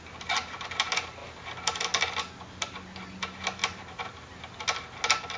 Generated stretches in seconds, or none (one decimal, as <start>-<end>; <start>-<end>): none